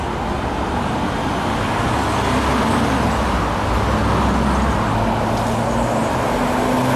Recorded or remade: recorded